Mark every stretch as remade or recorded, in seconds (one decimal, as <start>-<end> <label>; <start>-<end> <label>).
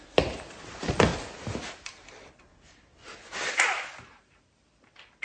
0.0-1.1 remade; 1.1-1.8 recorded; 1.8-2.5 remade; 2.5-3.5 recorded; 3.5-5.2 remade